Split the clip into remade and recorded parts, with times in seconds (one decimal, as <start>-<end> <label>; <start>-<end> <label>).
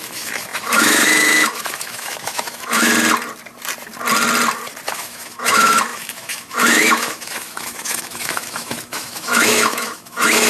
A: 0.0-2.9 remade; 2.9-4.9 recorded; 4.9-10.5 remade